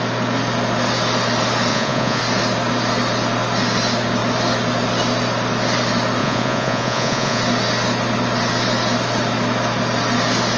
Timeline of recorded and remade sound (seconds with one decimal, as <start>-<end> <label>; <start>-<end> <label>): 0.0-1.7 recorded; 1.7-2.2 remade; 2.2-6.2 recorded; 6.2-7.4 remade; 7.4-10.6 recorded